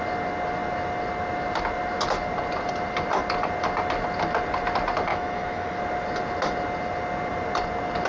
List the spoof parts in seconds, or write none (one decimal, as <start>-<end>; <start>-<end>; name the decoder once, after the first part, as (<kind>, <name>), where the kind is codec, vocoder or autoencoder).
5.1-5.8 (autoencoder, DAC-VAE)